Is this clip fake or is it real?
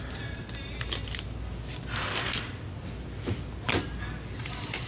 real